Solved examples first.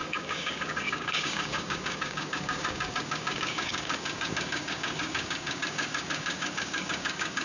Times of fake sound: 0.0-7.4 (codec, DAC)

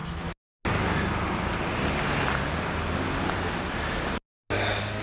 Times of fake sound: none

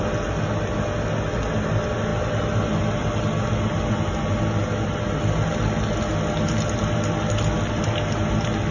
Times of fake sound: none

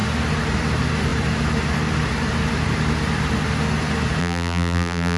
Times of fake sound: 4.2-5.2 (vocoder, BigVGAN v2)

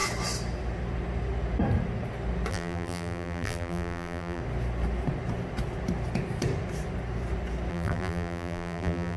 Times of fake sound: 2.5-4.4 (vocoder, BigVGAN v2); 7.7-9.2

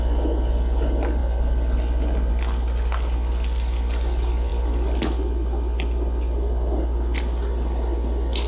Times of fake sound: none

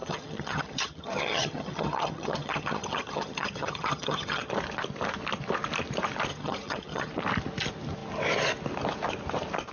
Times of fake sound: 0.0-4.5 (vocoder, HiFi-GAN); 6.3-7.1

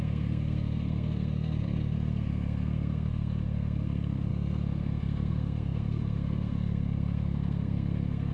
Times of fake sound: 0.0-8.3 (codec, SNAC)